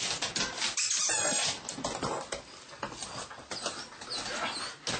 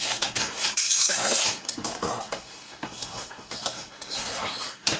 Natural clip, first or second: first